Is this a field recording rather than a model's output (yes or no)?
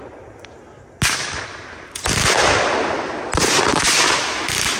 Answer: yes